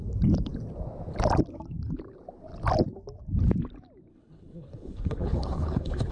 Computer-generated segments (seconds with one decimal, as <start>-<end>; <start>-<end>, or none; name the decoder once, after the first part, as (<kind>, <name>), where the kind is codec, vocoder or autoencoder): 4.1-6.1 (codec, HILCodec)